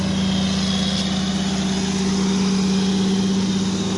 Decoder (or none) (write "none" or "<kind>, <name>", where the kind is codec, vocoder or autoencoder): none